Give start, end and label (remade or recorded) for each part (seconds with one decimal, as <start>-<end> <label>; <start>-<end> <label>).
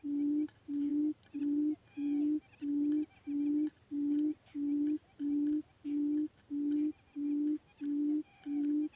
0.0-9.0 recorded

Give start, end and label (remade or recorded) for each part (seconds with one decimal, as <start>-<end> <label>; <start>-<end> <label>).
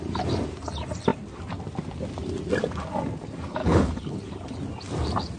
0.0-3.6 recorded; 3.6-4.6 remade; 4.6-5.4 recorded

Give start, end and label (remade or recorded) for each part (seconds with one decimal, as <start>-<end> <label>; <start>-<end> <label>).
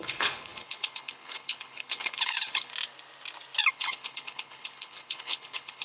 0.0-2.7 remade; 2.7-3.7 recorded; 3.7-5.8 remade